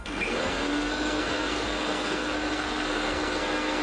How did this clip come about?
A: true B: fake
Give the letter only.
B